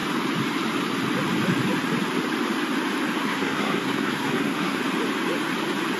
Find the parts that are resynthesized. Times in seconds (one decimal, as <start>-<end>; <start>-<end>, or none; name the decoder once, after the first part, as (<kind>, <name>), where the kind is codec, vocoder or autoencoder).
3.2-4.8 (codec, SNAC)